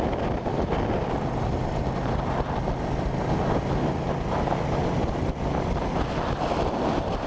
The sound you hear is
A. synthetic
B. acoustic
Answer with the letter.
B